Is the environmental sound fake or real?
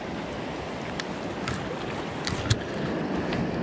real